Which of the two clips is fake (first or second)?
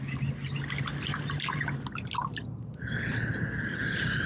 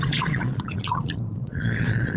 second